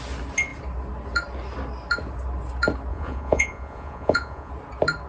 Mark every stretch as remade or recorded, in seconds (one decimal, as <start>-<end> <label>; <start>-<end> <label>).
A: 0.0-2.9 recorded; 2.9-4.5 remade; 4.5-5.1 recorded